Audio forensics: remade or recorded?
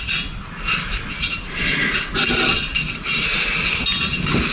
remade